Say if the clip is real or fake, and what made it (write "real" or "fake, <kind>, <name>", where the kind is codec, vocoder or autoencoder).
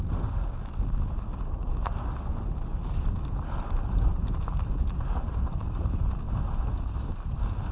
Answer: real